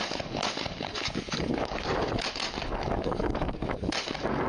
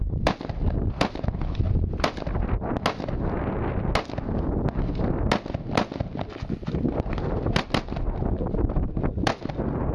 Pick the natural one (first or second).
second